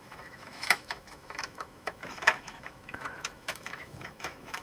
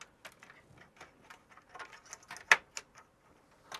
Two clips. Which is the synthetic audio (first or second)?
first